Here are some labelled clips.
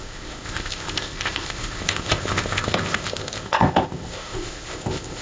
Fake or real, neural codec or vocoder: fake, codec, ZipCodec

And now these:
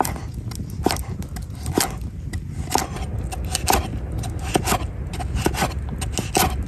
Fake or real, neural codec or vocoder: real